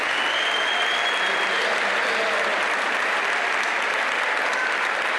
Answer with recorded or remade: recorded